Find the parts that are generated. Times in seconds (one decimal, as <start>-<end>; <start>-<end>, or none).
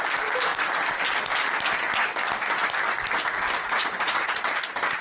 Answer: 3.6-4.4